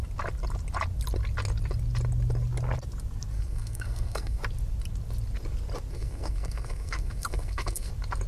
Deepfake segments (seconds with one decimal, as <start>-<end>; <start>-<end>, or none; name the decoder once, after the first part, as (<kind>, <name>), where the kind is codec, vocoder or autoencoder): 3.3-4.4 (codec, SNAC); 5.9-7.9